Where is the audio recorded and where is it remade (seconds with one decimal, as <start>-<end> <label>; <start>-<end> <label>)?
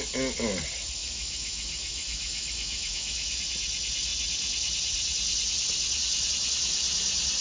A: 0.0-1.0 recorded; 1.0-3.4 remade; 3.4-7.4 recorded